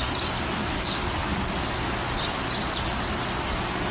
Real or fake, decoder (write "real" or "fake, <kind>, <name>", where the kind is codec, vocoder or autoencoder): real